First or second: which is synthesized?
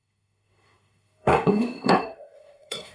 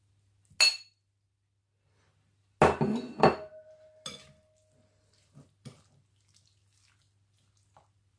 first